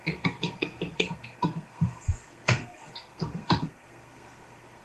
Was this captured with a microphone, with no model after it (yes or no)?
no